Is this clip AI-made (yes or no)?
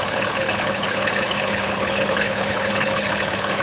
yes